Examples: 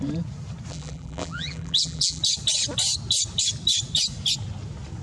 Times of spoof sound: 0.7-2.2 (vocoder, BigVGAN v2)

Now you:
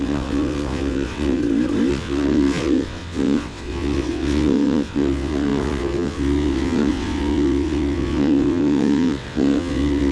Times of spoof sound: 0.0-1.4 (vocoder, WaveNeXt); 1.9-10.1

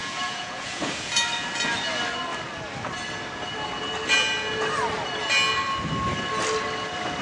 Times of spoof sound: 0.0-1.1 (vocoder, Vocos)

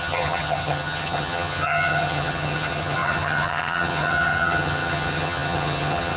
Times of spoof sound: 0.0-6.2 (vocoder, HiFi-GAN)

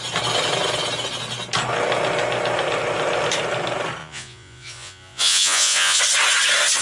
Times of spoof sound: 4.0-6.0 (vocoder, Vocos)

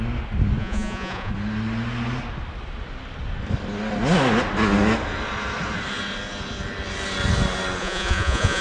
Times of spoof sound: 0.6-1.3 (vocoder, Vocos); 7.8-8.6